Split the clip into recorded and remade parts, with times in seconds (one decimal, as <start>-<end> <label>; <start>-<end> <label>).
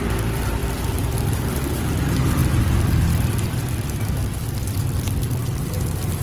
0.0-2.4 remade; 2.4-4.7 recorded; 4.7-6.2 remade